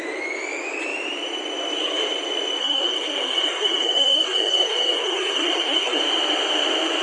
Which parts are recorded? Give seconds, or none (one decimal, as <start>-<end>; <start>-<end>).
0.0-2.6; 6.0-7.0

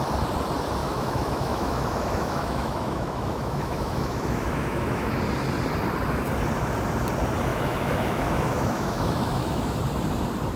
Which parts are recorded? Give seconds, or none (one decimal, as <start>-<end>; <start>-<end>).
0.0-0.8; 5.2-7.5; 9.8-10.6

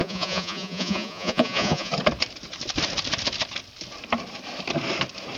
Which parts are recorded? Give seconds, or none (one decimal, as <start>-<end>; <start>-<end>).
1.9-5.4

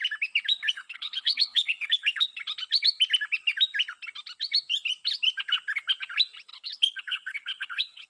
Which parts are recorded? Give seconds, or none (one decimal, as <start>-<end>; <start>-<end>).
0.0-0.6; 2.4-6.5

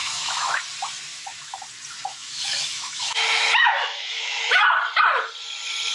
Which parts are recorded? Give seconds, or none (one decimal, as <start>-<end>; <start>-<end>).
0.6-1.1; 1.6-2.1; 4.6-5.9

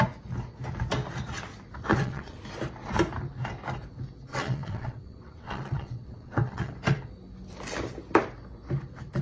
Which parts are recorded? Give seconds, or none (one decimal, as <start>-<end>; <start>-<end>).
0.0-1.9; 2.4-4.3; 6.7-9.2

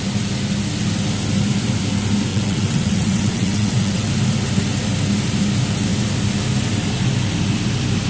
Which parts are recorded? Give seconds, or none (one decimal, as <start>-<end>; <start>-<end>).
0.0-2.3; 4.1-8.1

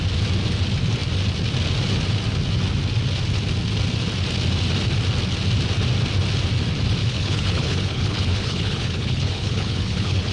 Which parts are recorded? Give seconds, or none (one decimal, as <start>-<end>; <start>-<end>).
0.0-7.0